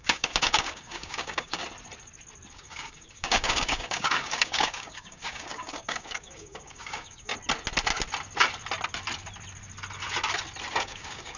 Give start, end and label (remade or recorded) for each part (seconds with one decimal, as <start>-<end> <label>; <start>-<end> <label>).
0.0-1.6 remade; 1.6-2.5 recorded; 2.5-7.3 remade; 7.3-10.7 recorded; 10.7-11.4 remade